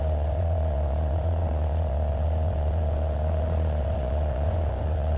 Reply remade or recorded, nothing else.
remade